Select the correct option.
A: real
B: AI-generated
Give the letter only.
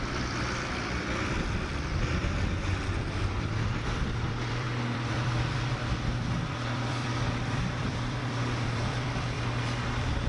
B